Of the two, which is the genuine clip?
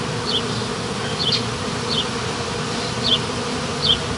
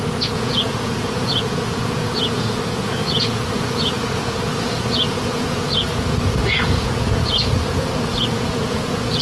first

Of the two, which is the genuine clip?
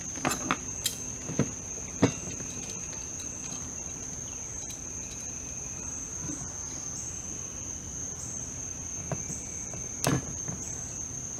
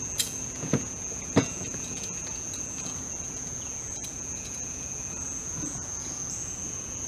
first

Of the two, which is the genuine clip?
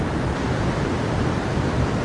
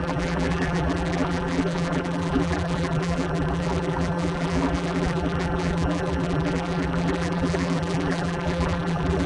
first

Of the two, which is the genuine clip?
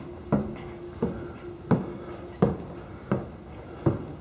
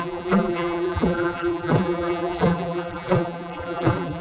first